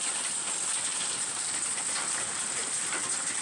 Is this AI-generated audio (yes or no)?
no